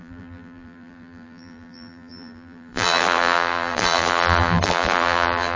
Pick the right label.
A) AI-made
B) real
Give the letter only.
A